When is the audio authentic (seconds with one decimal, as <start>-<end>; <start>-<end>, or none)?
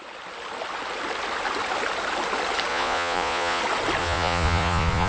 0.0-2.7; 3.6-4.0